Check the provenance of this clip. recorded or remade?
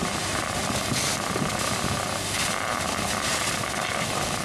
recorded